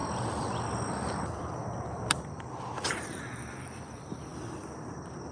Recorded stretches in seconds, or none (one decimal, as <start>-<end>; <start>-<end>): 3.2-4.3